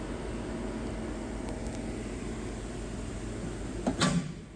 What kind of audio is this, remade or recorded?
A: recorded